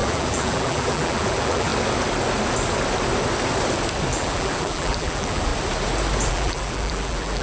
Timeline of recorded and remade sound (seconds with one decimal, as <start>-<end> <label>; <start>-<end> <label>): 0.0-1.7 remade; 1.7-4.1 recorded; 4.1-5.5 remade; 5.5-6.3 recorded; 6.3-7.4 remade

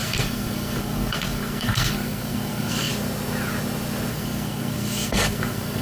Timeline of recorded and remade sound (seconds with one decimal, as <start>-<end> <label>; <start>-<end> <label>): 0.0-2.9 remade; 2.9-4.1 recorded; 4.1-5.8 remade